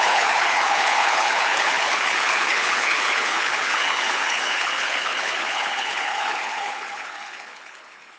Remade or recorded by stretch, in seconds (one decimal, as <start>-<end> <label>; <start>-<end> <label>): 0.0-8.2 remade